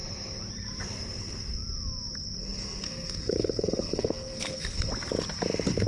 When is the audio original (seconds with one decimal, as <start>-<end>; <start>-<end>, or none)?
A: 0.0-2.4; 4.9-5.9